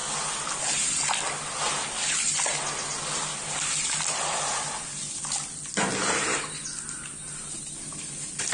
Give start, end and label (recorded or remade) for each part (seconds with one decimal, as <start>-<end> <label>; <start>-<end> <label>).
0.0-8.5 recorded